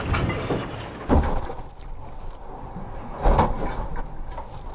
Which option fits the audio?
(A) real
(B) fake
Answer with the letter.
A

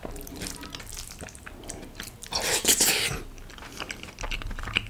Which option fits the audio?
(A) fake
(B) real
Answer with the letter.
B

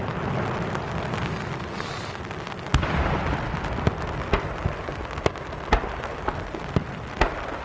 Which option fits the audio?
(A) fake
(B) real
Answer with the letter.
B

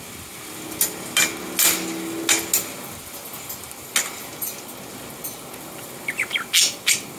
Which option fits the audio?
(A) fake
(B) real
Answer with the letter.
B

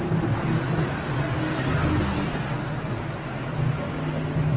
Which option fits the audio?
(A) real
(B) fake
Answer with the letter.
A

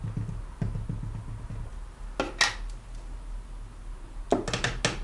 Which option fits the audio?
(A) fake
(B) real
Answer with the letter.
B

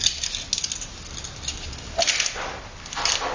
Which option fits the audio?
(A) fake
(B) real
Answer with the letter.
B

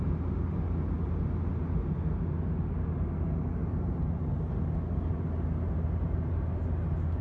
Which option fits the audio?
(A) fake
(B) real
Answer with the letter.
B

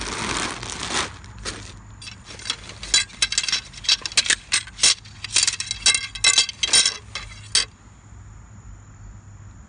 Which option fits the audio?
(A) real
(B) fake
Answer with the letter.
A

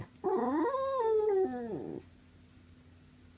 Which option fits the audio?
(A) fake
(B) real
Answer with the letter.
B